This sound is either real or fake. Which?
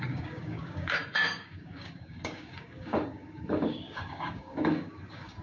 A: fake